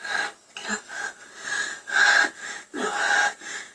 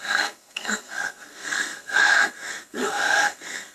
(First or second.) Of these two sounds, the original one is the first